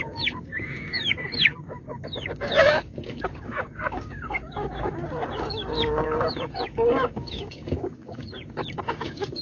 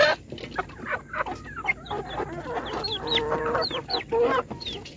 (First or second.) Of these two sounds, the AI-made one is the first